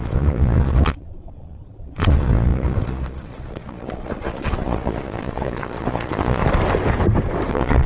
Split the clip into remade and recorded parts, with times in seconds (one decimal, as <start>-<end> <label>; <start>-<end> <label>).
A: 0.0-6.4 remade; 6.4-7.5 recorded; 7.5-7.9 remade